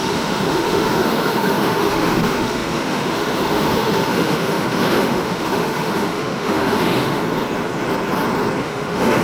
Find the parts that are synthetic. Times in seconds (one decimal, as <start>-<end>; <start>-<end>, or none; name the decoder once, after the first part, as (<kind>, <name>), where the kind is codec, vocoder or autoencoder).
0.0-7.2 (autoencoder, DAC-VAE); 8.6-9.2